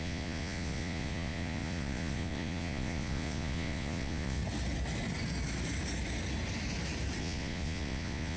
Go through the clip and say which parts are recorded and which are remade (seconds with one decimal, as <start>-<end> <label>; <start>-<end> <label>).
0.0-4.4 remade; 4.4-7.2 recorded; 7.2-8.4 remade

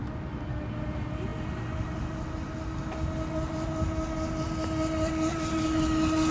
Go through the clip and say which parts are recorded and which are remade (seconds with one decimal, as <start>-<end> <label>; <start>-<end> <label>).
0.0-6.3 recorded